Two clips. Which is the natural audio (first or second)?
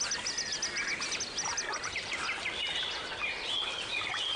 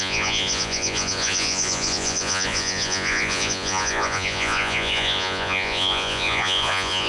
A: first